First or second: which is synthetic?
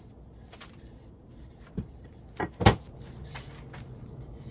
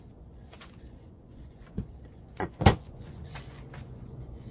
second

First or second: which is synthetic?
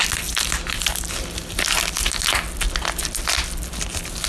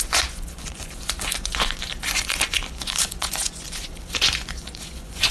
second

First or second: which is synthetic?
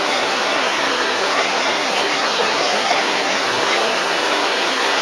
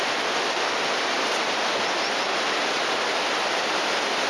first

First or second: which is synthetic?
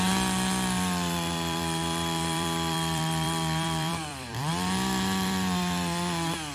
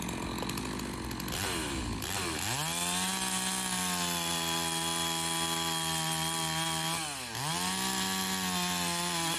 first